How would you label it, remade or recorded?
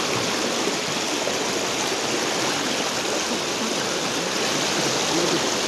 recorded